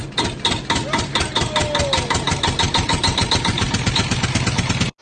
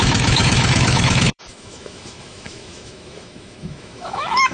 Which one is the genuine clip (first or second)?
first